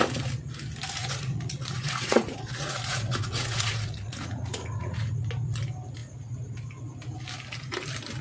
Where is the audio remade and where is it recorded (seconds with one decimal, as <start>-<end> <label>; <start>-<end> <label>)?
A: 0.0-1.0 recorded; 1.0-5.1 remade; 5.1-8.2 recorded